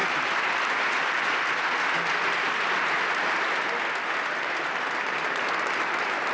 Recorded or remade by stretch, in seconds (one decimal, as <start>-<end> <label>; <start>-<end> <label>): 0.0-6.3 recorded

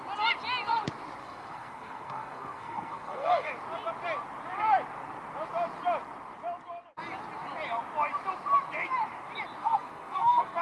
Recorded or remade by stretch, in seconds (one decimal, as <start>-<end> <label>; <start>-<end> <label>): 0.0-1.2 recorded; 1.2-3.5 remade; 3.5-9.6 recorded; 9.6-10.6 remade

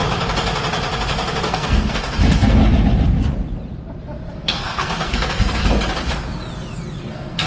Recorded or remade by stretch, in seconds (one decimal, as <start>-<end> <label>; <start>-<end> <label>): 0.0-1.4 recorded; 1.4-2.6 remade; 2.6-4.3 recorded; 4.3-5.6 remade; 5.6-7.0 recorded; 7.0-7.5 remade

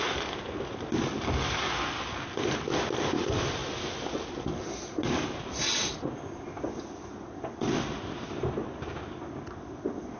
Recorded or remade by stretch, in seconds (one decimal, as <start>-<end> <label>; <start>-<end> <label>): 0.0-10.2 recorded